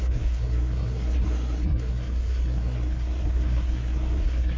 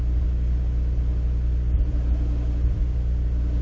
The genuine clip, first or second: second